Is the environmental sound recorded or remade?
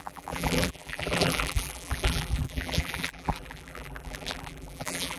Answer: remade